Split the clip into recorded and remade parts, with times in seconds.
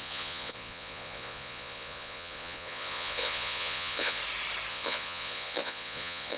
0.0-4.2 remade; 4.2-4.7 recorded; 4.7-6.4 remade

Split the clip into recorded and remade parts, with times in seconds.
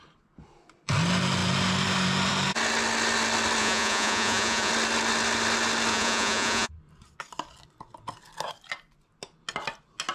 0.0-3.6 recorded; 3.6-4.7 remade; 4.7-5.9 recorded; 5.9-6.7 remade; 6.7-10.1 recorded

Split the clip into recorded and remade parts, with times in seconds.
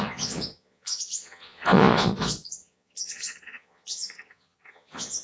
0.0-5.2 remade